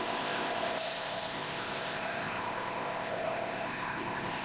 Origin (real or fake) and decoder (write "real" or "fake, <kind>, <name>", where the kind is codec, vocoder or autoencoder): fake, codec, ZipCodec